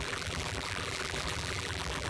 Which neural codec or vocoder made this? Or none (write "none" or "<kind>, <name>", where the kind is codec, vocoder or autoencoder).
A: vocoder, BigVGAN v2